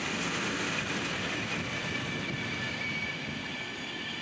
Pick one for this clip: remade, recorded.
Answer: recorded